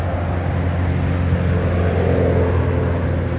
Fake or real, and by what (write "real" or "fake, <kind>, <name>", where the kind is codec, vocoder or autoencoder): real